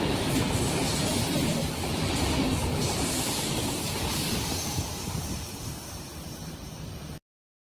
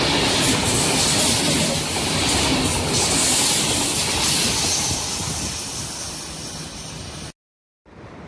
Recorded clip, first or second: second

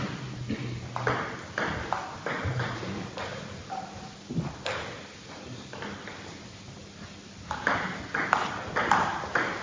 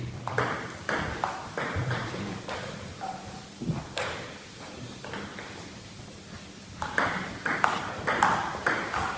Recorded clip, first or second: first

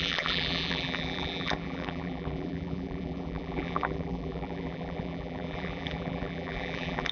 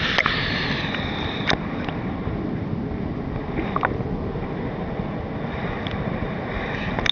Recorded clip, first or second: second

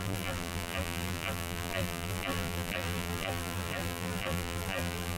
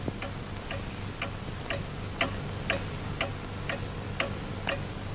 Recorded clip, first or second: second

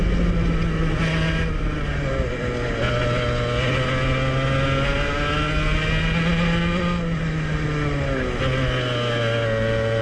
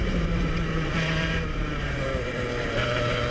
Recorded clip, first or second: first